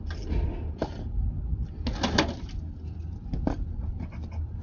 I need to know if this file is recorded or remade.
recorded